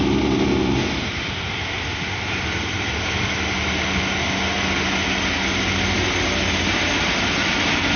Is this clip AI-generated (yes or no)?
no